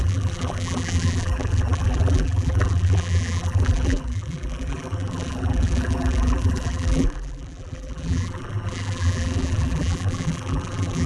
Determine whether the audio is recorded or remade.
remade